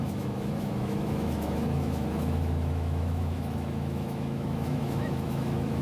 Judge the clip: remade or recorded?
remade